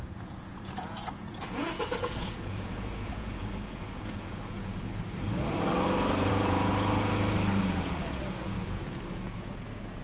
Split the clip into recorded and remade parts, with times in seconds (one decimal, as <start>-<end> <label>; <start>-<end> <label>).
0.0-4.9 remade; 4.9-6.3 recorded; 6.3-6.7 remade; 6.7-7.6 recorded; 7.6-10.0 remade

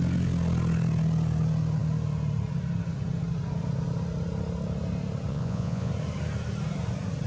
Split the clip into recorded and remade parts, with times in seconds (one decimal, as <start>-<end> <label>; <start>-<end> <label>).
0.0-5.3 recorded; 5.3-5.9 remade; 5.9-7.3 recorded